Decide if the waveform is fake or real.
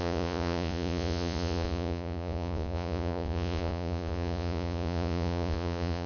fake